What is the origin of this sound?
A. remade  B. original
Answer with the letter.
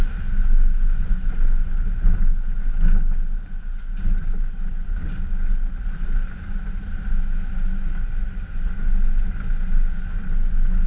B